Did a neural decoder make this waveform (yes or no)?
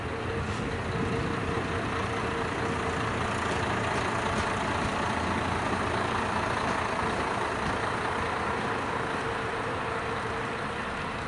no